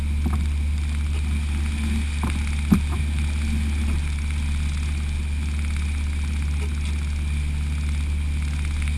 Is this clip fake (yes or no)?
no